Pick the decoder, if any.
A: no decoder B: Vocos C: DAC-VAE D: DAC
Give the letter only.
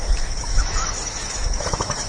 C